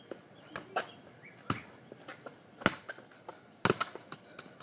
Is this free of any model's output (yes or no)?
yes